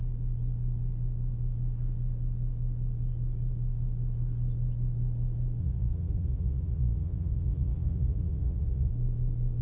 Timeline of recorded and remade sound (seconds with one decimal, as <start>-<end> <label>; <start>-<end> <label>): 0.0-5.6 recorded; 5.6-8.9 remade; 8.9-9.6 recorded

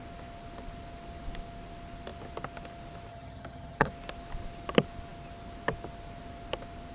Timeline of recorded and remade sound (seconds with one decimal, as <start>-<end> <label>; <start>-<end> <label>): 0.0-3.1 recorded; 3.1-3.9 remade; 3.9-6.9 recorded

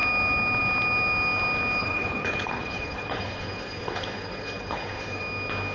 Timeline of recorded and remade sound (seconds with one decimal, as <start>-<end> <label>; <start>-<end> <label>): 0.0-1.8 recorded; 1.8-5.2 remade; 5.2-5.7 recorded

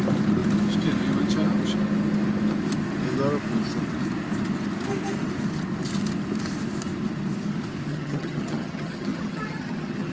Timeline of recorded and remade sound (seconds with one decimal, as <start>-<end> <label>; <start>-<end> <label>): 0.0-7.9 recorded; 7.9-10.1 remade